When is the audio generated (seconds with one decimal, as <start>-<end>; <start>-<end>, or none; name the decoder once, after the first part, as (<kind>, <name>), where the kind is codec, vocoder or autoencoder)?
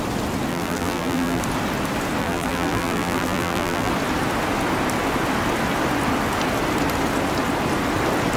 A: 0.5-1.4 (vocoder, BigVGAN v2); 2.2-3.9